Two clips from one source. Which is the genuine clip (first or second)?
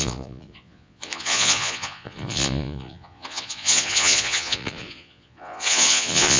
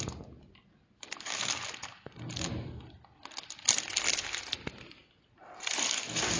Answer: second